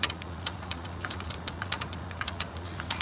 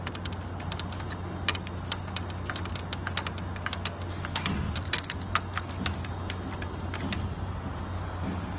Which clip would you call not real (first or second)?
first